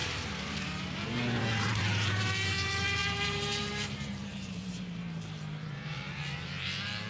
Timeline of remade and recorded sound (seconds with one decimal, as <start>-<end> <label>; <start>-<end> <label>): 0.0-7.1 remade